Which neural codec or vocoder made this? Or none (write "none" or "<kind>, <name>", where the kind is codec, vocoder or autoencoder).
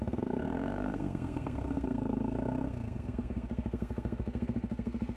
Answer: codec, SNAC